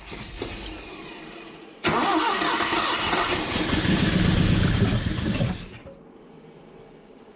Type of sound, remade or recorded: recorded